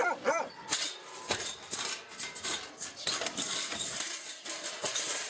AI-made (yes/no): yes